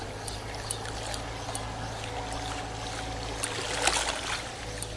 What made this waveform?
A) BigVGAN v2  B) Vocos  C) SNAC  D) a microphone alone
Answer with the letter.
D